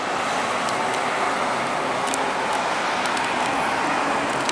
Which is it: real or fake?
real